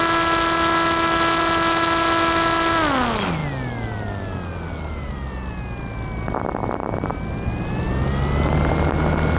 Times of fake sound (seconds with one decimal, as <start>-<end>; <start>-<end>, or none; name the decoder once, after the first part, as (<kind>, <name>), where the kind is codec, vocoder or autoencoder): none